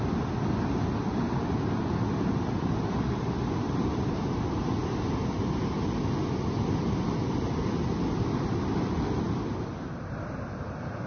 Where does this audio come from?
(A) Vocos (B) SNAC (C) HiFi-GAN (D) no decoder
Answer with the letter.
D